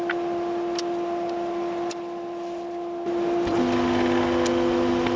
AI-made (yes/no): no